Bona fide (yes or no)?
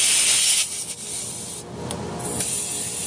yes